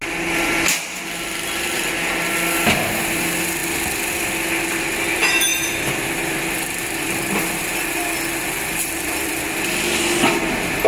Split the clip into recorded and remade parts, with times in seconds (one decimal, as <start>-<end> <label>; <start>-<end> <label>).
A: 0.0-5.5 recorded; 5.5-7.6 remade; 7.6-10.9 recorded

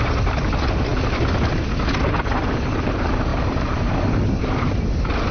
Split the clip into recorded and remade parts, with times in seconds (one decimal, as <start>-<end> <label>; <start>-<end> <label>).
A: 0.0-5.3 recorded

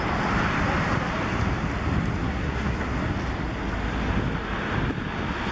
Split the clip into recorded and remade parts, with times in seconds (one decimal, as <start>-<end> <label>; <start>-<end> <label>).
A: 0.0-2.2 recorded; 2.2-2.8 remade; 2.8-5.5 recorded

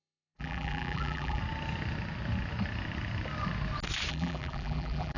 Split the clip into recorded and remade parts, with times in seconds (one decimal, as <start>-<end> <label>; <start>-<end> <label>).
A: 0.0-1.4 remade; 1.4-4.1 recorded; 4.1-5.2 remade

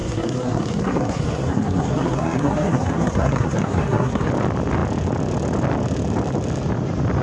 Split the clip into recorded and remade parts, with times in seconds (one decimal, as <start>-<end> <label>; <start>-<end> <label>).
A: 0.0-4.3 remade; 4.3-7.2 recorded

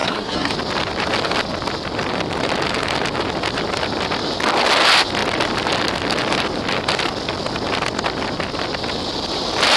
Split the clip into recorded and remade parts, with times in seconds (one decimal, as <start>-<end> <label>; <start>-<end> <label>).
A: 0.0-0.5 remade; 0.5-9.8 recorded